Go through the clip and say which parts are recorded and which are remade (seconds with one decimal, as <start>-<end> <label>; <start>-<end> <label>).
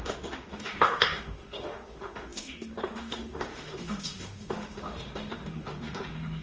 0.0-6.4 remade